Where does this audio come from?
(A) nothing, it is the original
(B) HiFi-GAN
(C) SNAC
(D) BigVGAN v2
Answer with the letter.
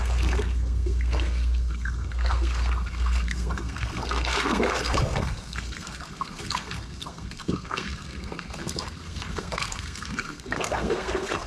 C